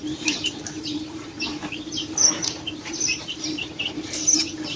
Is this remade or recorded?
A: remade